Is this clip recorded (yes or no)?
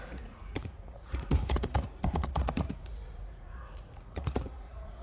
no